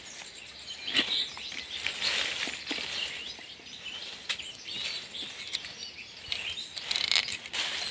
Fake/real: real